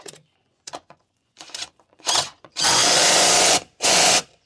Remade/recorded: remade